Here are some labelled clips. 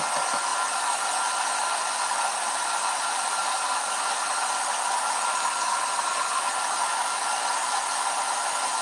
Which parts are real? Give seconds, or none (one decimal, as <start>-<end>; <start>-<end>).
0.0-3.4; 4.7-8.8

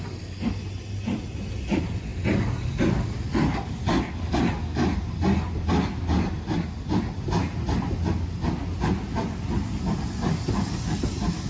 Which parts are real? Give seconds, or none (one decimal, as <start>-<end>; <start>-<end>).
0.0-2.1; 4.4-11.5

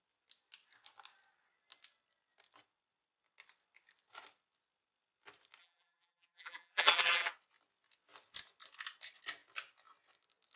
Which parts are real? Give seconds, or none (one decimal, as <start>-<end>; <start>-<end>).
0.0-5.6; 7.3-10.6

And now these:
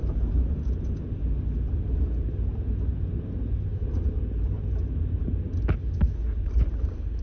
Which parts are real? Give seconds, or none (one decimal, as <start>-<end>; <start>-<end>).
0.0-3.7; 5.3-7.2

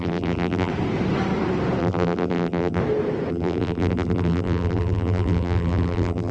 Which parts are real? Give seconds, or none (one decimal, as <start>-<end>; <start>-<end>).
0.7-1.8; 2.8-3.3